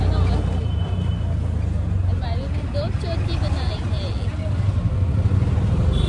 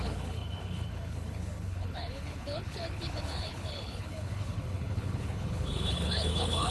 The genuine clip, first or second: first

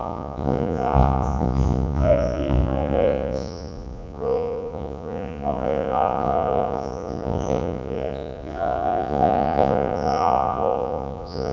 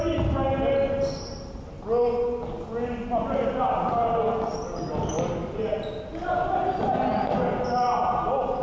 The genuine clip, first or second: second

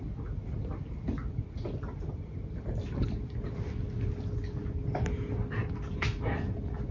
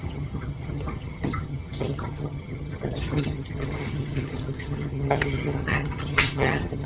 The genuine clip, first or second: first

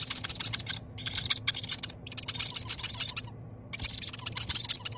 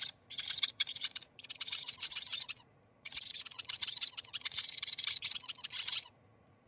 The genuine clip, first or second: first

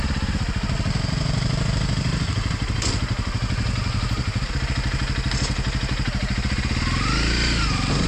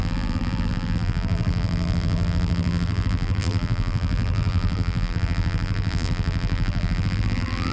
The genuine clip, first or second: first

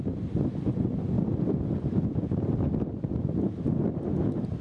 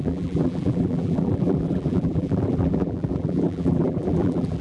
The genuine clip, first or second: first